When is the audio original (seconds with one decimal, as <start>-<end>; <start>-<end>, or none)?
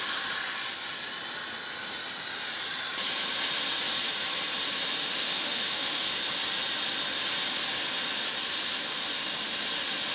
0.0-5.0; 6.1-10.1